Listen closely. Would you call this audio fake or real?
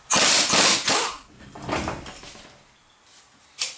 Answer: fake